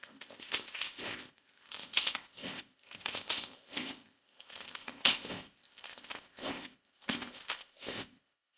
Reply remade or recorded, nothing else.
remade